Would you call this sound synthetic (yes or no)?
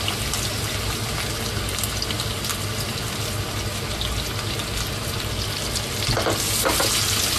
no